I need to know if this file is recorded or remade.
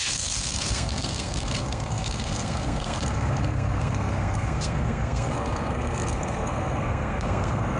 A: remade